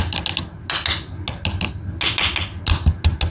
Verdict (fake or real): real